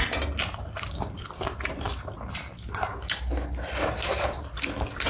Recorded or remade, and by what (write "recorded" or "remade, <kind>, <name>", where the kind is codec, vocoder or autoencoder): recorded